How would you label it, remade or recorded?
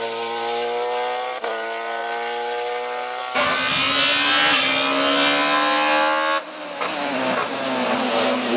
recorded